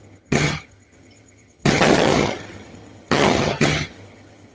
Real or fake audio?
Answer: fake